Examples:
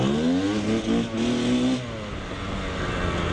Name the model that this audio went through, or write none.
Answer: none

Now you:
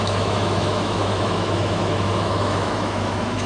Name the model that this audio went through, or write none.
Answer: autoencoder, DAC-VAE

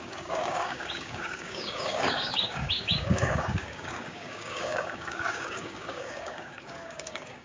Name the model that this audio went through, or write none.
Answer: codec, DAC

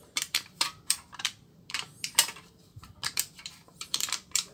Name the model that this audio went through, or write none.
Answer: vocoder, BigVGAN v2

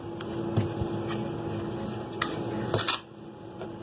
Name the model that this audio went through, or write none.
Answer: none